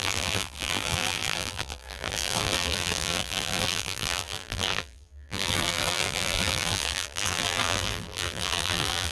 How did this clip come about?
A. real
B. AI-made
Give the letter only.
B